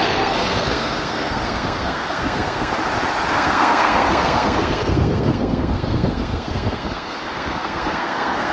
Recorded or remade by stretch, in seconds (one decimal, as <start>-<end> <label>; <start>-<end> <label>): 0.0-2.8 remade; 2.8-3.3 recorded; 3.3-8.5 remade